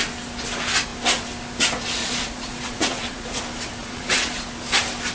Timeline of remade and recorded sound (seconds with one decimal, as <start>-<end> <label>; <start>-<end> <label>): 0.0-2.0 recorded; 2.0-3.4 remade; 3.4-3.8 recorded; 3.8-4.4 remade; 4.4-5.1 recorded